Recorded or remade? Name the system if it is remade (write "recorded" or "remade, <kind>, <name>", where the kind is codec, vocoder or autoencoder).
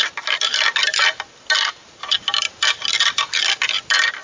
recorded